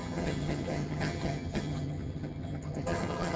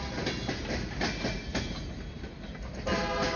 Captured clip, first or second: second